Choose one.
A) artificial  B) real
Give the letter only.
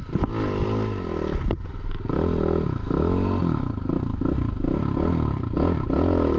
B